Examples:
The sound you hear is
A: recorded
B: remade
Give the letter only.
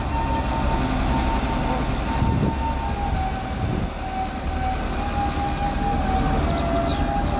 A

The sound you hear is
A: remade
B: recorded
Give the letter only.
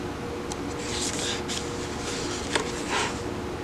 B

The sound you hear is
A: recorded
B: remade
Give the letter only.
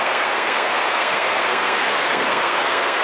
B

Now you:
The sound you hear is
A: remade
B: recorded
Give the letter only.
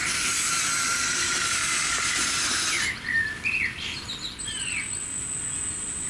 B